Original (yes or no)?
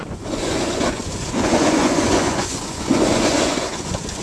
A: no